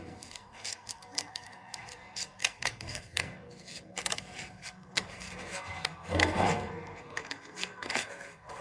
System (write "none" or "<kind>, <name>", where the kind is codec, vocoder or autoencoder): codec, SNAC